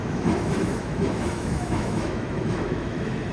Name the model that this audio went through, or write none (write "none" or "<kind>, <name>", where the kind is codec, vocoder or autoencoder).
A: autoencoder, DAC-VAE